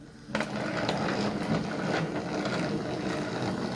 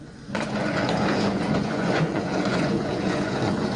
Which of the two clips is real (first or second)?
first